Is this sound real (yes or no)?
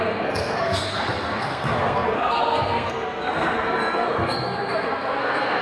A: no